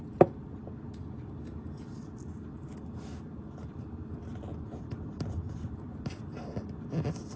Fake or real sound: real